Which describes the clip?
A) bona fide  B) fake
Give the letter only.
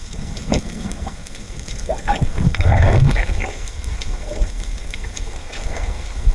B